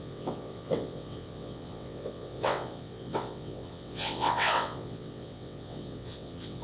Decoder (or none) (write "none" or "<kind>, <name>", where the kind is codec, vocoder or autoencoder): vocoder, WaveNeXt